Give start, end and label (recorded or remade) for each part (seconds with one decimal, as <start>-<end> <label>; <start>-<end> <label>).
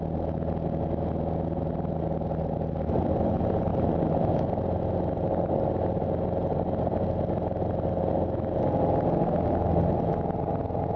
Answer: 0.0-3.7 recorded; 3.7-4.3 remade; 4.3-11.0 recorded